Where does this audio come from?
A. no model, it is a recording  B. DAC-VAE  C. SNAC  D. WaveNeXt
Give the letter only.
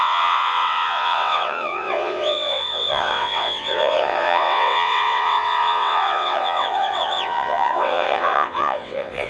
D